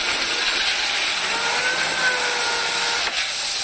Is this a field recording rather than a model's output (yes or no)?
yes